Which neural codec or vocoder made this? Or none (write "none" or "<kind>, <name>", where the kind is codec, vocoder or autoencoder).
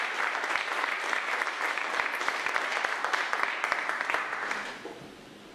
vocoder, BigVGAN v2